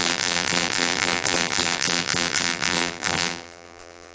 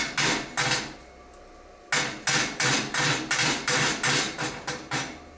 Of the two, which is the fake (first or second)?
first